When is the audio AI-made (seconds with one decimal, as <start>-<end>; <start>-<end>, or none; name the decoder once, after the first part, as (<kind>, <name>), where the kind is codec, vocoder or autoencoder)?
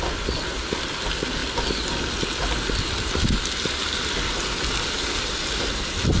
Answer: none